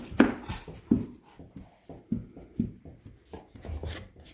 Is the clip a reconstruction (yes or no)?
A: no